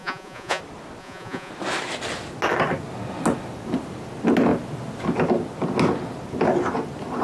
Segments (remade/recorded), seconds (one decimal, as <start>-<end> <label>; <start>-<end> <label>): 0.0-0.6 remade; 0.6-1.0 recorded; 1.0-1.5 remade; 1.5-7.2 recorded